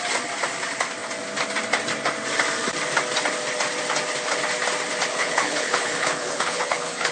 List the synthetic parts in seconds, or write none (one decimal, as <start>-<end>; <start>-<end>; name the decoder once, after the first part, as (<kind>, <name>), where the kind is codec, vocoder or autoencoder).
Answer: 5.1-7.1 (codec, HILCodec)